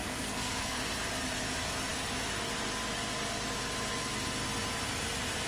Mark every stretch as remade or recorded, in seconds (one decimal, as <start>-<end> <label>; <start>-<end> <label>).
0.0-0.8 remade; 0.8-5.5 recorded